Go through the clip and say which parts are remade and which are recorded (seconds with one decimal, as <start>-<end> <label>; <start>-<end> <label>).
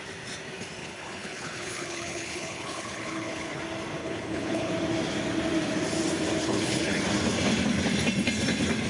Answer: 0.0-0.8 recorded; 0.8-3.6 remade; 3.6-4.0 recorded; 4.0-4.7 remade; 4.7-6.4 recorded; 6.4-7.0 remade; 7.0-8.9 recorded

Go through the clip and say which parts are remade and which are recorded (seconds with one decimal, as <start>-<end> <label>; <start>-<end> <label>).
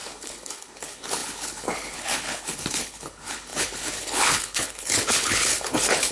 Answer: 0.0-6.1 remade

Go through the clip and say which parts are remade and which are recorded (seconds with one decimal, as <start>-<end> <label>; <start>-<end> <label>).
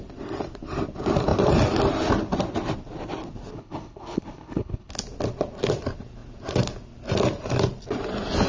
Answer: 0.0-3.5 recorded; 3.5-4.9 remade; 4.9-8.5 recorded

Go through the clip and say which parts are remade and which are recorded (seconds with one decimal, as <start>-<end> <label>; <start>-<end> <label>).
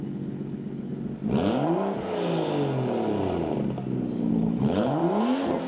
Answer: 0.0-0.9 remade; 0.9-4.3 recorded; 4.3-5.0 remade; 5.0-5.7 recorded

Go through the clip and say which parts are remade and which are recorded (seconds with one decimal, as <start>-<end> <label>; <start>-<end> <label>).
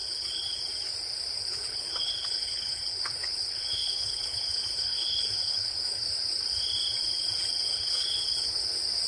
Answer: 0.0-0.6 remade; 0.6-1.4 recorded; 1.4-6.1 remade; 6.1-7.7 recorded; 7.7-8.6 remade; 8.6-9.1 recorded